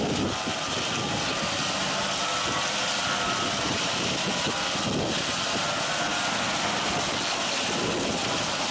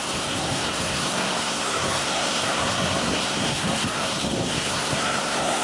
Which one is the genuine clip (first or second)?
first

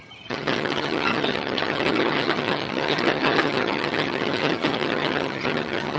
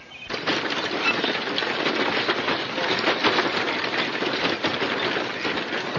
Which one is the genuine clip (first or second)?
second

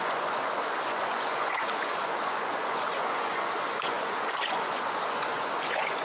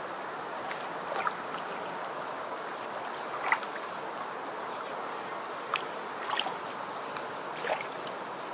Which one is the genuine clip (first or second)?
second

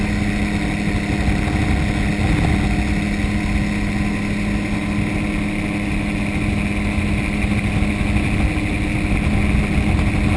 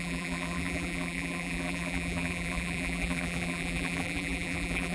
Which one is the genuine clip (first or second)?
first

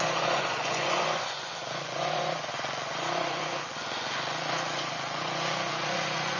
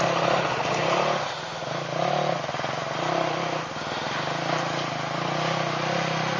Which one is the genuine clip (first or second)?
second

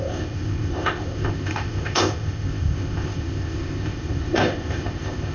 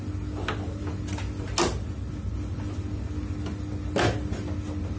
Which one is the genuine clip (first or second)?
second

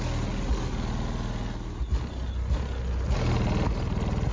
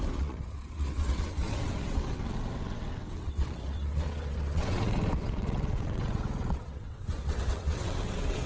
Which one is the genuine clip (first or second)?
first